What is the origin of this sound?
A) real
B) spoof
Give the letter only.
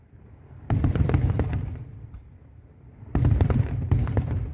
B